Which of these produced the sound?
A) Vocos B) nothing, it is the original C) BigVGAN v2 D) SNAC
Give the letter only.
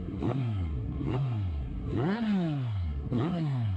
D